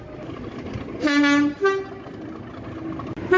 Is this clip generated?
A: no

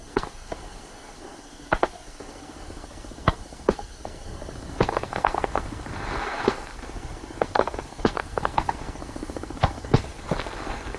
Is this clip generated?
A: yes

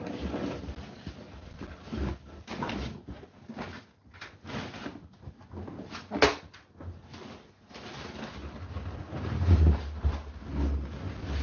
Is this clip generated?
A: no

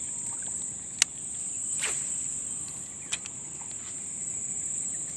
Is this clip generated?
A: no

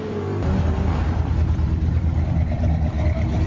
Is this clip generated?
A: yes